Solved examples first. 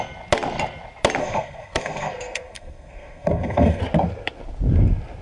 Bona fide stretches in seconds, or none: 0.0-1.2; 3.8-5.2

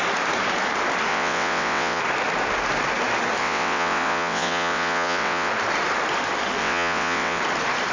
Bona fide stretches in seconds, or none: 0.0-1.1; 2.0-3.4; 5.5-6.6; 7.4-7.9

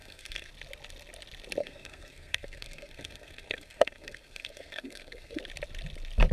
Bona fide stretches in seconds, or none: 0.5-1.6; 5.4-6.3

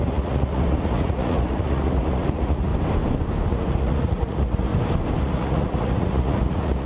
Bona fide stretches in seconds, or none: 2.7-3.5; 4.7-5.2